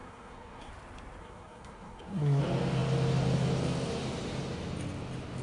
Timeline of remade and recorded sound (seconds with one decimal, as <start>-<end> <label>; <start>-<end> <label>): 0.0-0.7 remade; 0.7-1.2 recorded; 1.2-2.4 remade; 2.4-5.4 recorded